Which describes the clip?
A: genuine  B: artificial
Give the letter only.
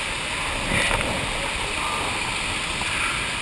A